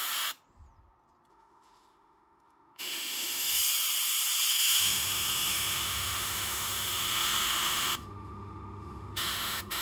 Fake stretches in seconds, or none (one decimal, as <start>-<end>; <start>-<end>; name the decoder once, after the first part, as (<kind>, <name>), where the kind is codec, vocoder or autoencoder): 1.3-3.6 (autoencoder, DAC-VAE); 4.5-9.8